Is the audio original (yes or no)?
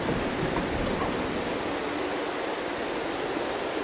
yes